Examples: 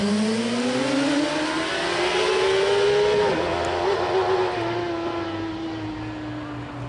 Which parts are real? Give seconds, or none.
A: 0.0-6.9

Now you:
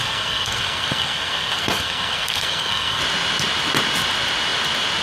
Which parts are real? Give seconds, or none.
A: 3.0-5.0

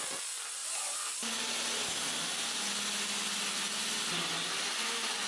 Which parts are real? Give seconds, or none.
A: 0.0-5.3

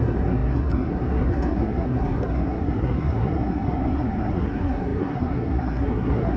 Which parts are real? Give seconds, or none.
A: none

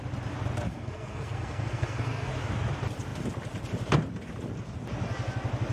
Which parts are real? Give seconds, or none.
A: 0.0-0.7; 2.3-5.7

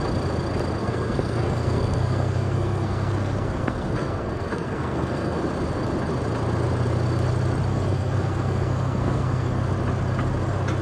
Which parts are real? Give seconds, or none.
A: 0.0-0.8; 5.4-7.7; 9.6-10.8

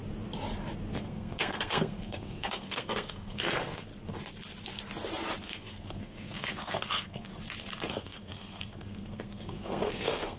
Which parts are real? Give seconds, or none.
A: 0.0-0.9; 3.9-5.4; 7.3-7.9